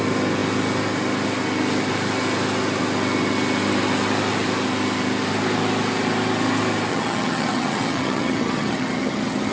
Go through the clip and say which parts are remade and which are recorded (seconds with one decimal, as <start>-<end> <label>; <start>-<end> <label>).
0.0-6.9 recorded; 6.9-9.5 remade